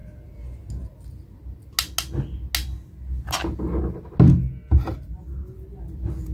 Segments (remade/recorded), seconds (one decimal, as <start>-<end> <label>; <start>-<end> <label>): 0.0-6.3 recorded